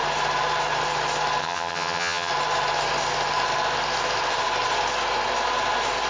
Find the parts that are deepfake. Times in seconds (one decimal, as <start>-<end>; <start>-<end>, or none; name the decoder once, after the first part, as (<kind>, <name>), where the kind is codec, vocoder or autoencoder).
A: 1.4-2.3 (vocoder, HiFi-GAN)